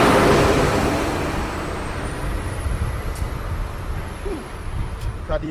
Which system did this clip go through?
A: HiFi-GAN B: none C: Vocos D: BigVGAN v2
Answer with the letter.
D